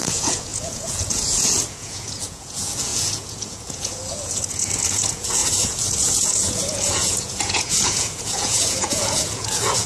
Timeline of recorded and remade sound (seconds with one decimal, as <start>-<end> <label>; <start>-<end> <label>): 0.0-9.9 remade